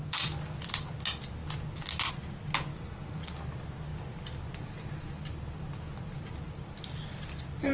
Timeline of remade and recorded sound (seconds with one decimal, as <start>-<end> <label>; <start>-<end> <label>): 0.0-2.7 recorded; 2.7-3.2 remade; 3.2-7.7 recorded